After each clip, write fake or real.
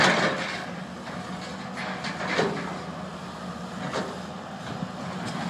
real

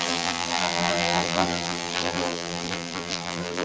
fake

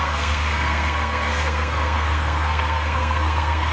fake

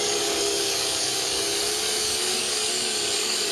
fake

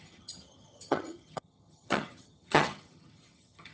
fake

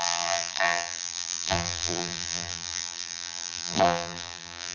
fake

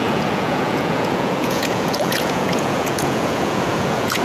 fake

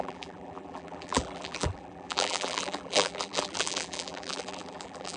fake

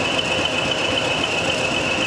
real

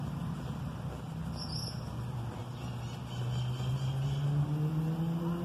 real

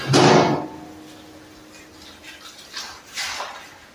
real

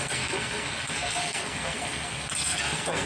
fake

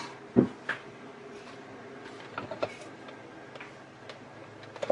real